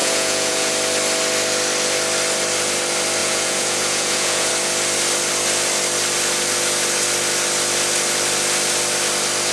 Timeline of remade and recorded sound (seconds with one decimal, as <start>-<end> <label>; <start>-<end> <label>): 0.0-0.7 remade; 0.7-3.2 recorded; 3.2-4.5 remade; 4.5-9.5 recorded